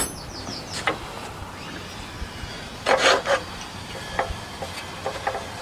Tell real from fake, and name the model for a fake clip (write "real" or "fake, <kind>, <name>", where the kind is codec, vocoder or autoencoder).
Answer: real